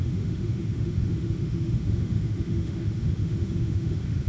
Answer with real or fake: fake